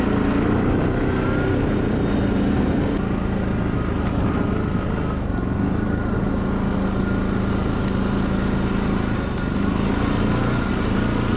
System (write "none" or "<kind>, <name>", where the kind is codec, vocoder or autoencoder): none